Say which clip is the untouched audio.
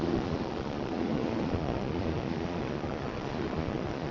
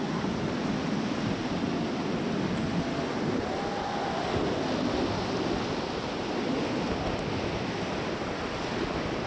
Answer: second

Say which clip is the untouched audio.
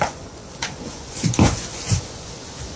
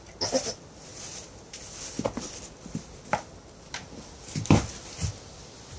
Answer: second